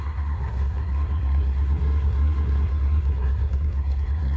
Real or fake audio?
fake